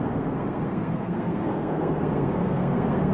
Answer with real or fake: fake